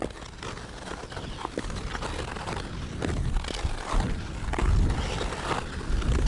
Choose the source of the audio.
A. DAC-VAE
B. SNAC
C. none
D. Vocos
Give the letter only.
C